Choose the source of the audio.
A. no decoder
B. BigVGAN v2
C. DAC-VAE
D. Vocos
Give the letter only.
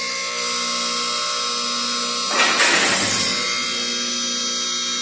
A